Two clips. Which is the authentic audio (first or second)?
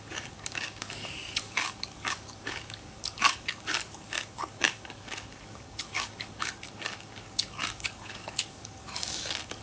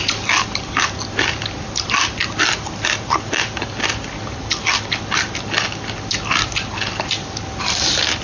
second